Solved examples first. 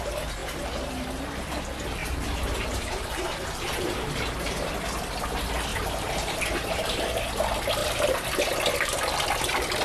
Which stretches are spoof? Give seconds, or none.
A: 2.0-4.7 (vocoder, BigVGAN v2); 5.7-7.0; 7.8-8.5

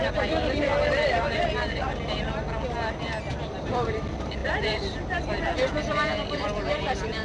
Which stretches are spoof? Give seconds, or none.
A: 0.0-0.7 (vocoder, BigVGAN v2); 3.3-7.2

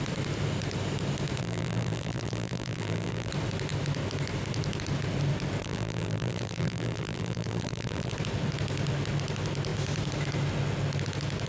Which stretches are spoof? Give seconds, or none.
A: 1.4-3.3 (vocoder, BigVGAN v2); 5.6-8.1

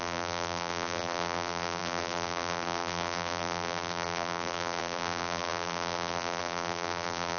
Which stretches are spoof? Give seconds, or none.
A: 0.0-7.4 (vocoder, BigVGAN v2)

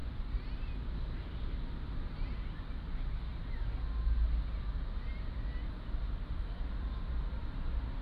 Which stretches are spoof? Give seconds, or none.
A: 0.0-0.5 (vocoder, BigVGAN v2)